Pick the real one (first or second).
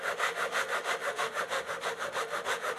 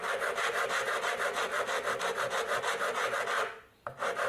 second